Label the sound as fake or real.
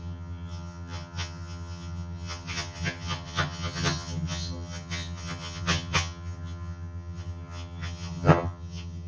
fake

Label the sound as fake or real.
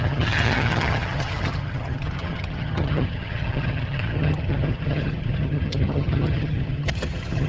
fake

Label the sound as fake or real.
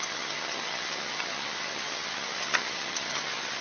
fake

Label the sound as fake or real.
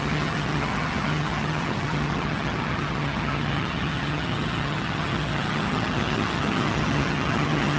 fake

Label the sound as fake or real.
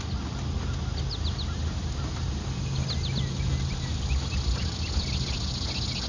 real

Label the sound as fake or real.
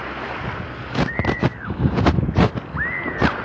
real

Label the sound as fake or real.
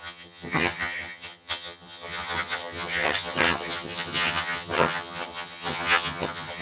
fake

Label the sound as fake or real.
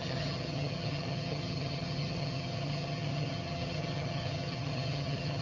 fake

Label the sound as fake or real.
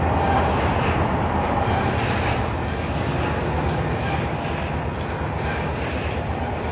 real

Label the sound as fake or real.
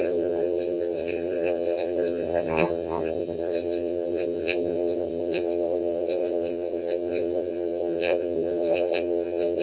fake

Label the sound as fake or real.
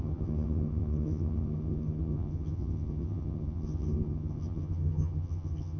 fake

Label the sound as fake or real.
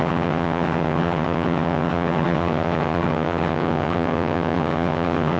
fake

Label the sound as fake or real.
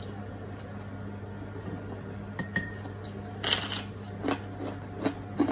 real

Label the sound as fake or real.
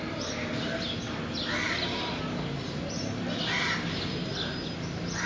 real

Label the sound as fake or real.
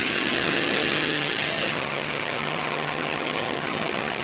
fake